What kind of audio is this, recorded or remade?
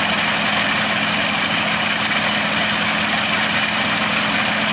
recorded